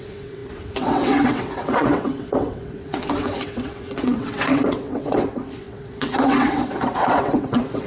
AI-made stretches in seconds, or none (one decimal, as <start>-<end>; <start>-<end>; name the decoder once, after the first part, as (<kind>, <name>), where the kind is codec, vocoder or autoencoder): 0.0-7.9 (vocoder, WaveNeXt)